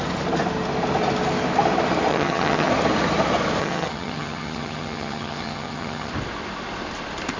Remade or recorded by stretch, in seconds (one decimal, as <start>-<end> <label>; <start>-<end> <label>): 0.0-2.1 recorded; 2.1-2.7 remade; 2.7-3.6 recorded; 3.6-6.1 remade; 6.1-7.4 recorded